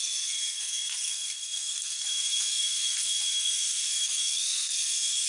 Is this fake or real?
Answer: fake